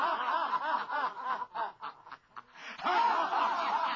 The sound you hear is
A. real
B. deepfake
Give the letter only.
A